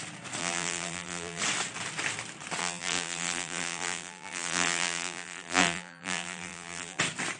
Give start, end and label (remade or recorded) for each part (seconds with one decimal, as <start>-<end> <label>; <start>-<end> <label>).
0.0-0.4 recorded; 0.4-1.4 remade; 1.4-2.6 recorded; 2.6-7.0 remade; 7.0-7.4 recorded